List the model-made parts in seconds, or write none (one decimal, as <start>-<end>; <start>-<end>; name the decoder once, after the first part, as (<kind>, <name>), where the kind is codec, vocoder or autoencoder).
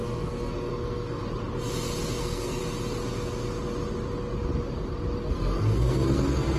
0.0-1.2 (codec, SNAC); 2.2-2.6; 5.3-6.6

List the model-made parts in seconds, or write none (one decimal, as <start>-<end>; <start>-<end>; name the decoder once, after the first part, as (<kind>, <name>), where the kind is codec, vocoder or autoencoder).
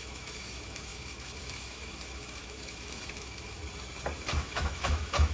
0.0-3.6 (autoencoder, DAC-VAE); 4.4-5.3